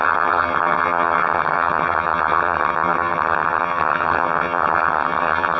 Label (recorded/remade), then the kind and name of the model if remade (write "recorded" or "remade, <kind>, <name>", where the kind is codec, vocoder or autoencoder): remade, vocoder, HiFi-GAN